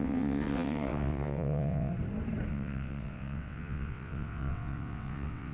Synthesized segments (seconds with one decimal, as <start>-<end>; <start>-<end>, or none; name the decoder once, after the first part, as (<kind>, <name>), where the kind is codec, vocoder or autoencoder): 0.0-1.9 (vocoder, WaveNeXt); 2.5-5.5